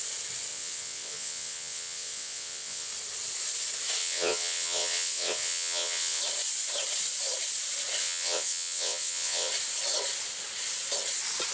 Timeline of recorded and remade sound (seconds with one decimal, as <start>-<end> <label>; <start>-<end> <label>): 0.0-0.5 recorded; 0.5-2.9 remade; 2.9-4.0 recorded; 4.0-6.2 remade; 6.2-8.0 recorded; 8.0-9.5 remade; 9.5-11.5 recorded